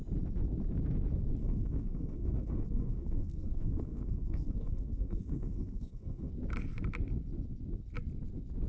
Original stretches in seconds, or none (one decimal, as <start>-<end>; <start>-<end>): 0.0-1.4; 6.3-8.7